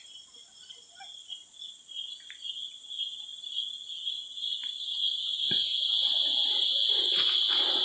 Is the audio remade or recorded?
recorded